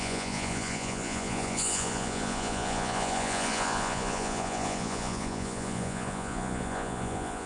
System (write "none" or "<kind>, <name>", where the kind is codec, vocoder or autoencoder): vocoder, Vocos